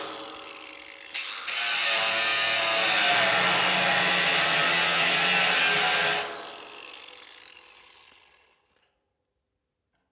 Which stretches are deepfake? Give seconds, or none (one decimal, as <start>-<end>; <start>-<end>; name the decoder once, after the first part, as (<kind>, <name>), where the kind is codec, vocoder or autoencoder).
none